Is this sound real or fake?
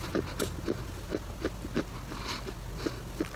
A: real